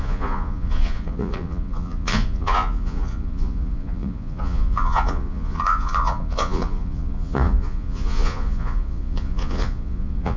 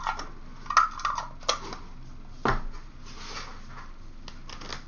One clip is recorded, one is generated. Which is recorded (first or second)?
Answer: second